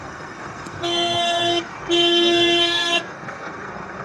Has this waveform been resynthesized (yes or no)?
yes